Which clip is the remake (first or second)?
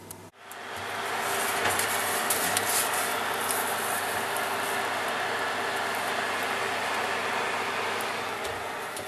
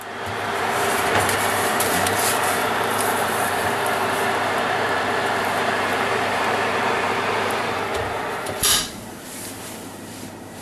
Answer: second